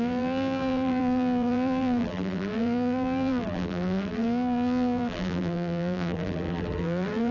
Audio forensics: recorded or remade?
remade